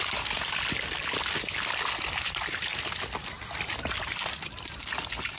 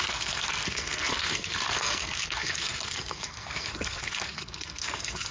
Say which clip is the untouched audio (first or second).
first